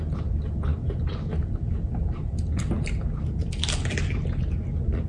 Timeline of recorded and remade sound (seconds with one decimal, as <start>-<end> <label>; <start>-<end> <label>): 0.0-5.1 recorded